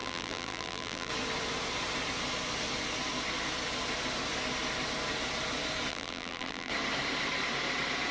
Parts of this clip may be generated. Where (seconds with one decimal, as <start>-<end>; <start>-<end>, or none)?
0.0-1.1; 5.9-6.7